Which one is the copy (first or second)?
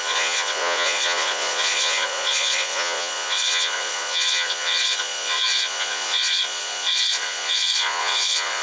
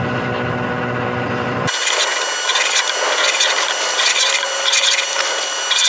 first